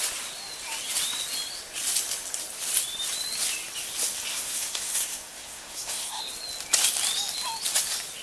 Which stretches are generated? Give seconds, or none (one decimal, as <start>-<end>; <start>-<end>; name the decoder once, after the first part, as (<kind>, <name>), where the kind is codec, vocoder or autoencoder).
4.3-6.2 (codec, SNAC)